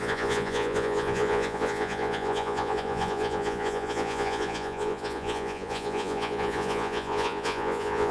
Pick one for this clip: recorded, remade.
remade